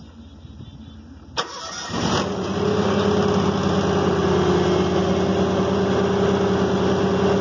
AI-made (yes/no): no